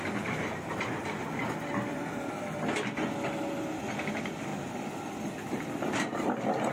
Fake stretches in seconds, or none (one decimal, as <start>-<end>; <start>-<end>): none